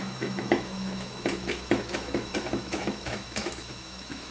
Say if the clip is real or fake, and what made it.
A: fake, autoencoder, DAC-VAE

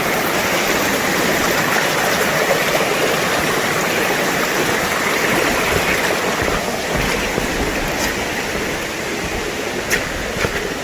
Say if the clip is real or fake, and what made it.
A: real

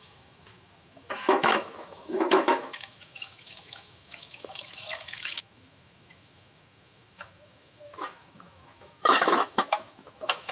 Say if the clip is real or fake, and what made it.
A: fake, autoencoder, DAC-VAE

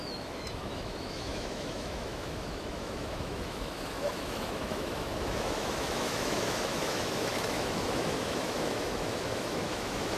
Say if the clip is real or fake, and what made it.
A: fake, autoencoder, DAC-VAE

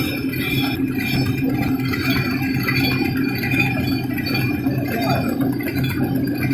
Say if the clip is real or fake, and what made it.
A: real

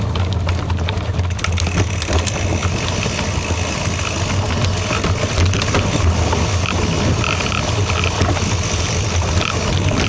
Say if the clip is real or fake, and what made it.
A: real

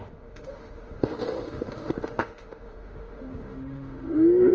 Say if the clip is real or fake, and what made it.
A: fake, autoencoder, DAC-VAE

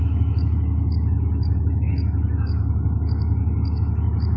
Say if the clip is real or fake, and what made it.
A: fake, autoencoder, DAC-VAE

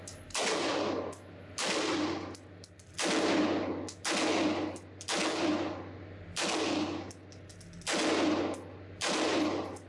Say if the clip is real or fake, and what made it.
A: real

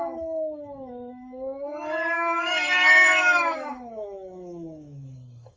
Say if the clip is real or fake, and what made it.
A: fake, autoencoder, DAC-VAE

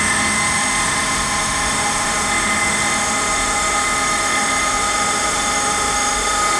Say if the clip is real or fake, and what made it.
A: fake, autoencoder, DAC-VAE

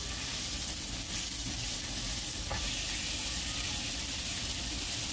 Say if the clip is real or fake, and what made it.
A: real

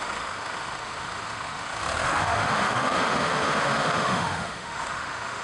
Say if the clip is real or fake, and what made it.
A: fake, autoencoder, DAC-VAE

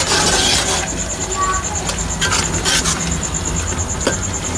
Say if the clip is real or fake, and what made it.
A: real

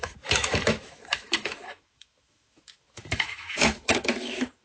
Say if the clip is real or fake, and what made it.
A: fake, autoencoder, DAC-VAE